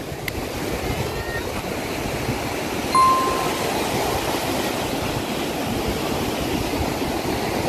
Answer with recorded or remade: recorded